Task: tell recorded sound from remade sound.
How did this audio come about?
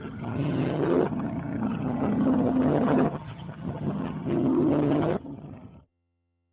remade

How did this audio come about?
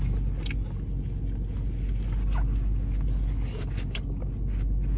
recorded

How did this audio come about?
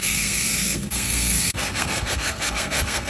remade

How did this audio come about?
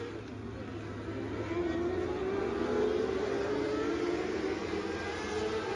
recorded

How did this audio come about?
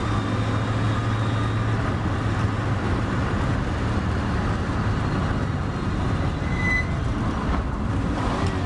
recorded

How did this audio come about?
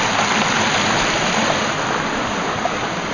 recorded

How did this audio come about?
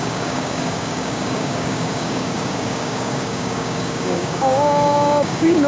remade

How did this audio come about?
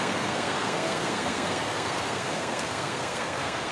remade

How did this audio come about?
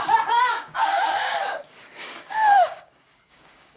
remade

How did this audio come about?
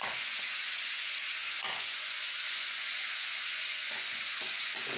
remade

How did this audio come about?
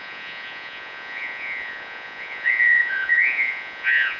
remade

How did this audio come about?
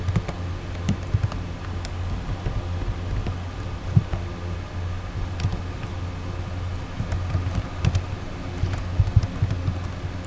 recorded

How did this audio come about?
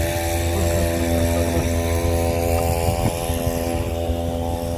recorded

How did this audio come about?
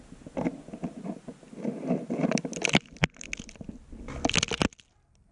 recorded